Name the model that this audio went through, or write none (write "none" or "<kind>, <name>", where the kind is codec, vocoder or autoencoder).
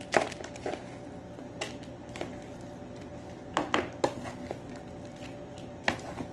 none